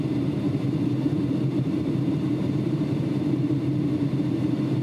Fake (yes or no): yes